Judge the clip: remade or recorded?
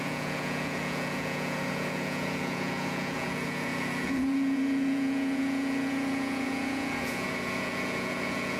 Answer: remade